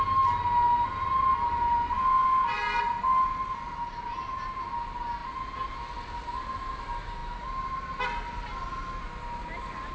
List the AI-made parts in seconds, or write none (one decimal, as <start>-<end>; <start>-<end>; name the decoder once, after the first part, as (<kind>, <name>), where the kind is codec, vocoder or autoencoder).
none